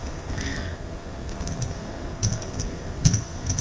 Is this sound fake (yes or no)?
yes